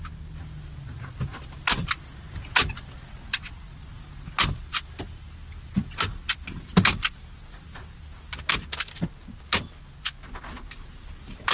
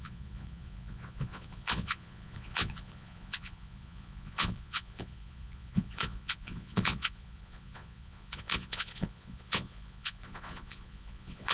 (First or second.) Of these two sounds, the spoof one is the second